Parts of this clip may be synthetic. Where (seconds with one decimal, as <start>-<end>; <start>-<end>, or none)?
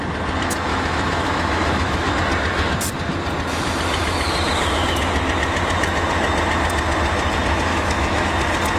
0.7-2.1; 7.7-8.3